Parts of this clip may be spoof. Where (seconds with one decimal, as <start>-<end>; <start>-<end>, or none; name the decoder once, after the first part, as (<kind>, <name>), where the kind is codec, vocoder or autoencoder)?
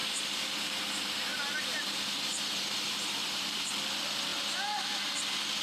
1.3-3.7 (vocoder, BigVGAN v2)